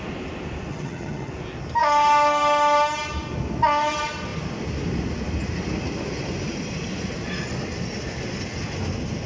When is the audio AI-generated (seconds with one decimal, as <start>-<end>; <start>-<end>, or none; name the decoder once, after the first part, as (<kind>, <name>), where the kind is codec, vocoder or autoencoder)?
0.7-1.3 (vocoder, HiFi-GAN)